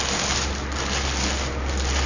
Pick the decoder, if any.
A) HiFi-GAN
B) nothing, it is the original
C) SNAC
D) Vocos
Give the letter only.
B